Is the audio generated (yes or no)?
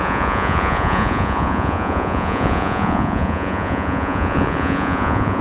yes